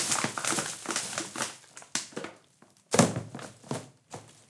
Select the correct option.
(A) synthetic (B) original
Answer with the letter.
B